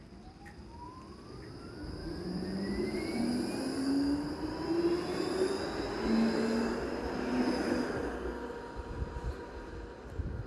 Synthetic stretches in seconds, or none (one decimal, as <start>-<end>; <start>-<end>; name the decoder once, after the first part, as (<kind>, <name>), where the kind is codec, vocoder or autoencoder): 2.0-3.2 (vocoder, BigVGAN v2)